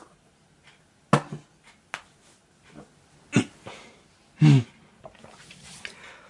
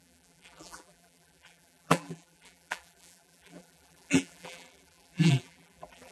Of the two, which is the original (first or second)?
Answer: first